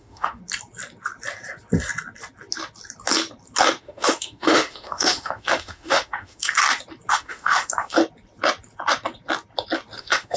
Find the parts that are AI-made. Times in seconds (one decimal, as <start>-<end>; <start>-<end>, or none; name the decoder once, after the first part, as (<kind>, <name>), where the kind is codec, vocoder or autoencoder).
0.0-0.4 (autoencoder, DAC-VAE); 3.8-6.6; 7.1-8.0; 10.0-10.4